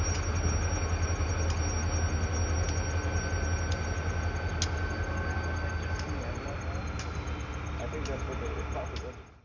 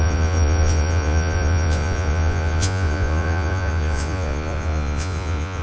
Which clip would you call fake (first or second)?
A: second